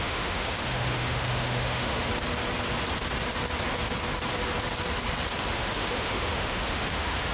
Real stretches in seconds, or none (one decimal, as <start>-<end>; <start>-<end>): 2.1-5.5